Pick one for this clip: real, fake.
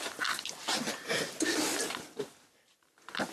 real